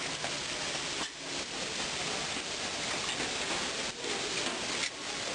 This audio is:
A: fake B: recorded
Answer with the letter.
B